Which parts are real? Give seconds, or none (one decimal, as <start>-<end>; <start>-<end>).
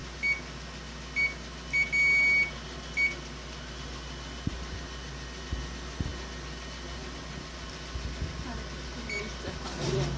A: 0.0-3.7; 6.1-9.3